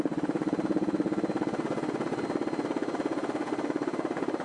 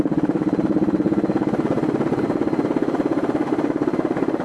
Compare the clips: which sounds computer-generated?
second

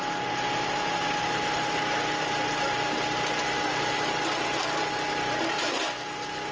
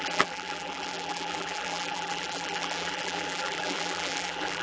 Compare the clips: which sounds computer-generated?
second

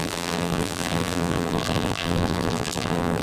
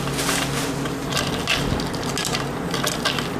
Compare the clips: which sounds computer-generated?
first